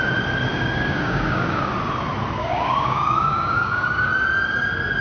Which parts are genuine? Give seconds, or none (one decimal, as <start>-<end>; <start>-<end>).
0.0-0.5; 1.7-2.4; 4.1-5.0